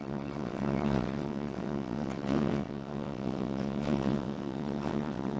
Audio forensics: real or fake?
fake